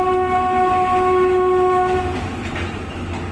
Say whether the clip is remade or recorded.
recorded